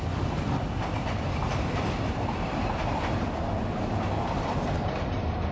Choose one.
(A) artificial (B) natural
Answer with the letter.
B